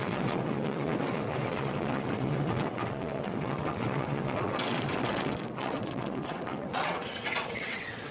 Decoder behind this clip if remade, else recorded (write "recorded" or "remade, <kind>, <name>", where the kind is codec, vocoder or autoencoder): remade, vocoder, WaveNeXt